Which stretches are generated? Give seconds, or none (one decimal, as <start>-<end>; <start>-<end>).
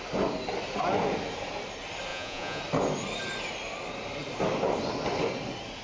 2.1-2.6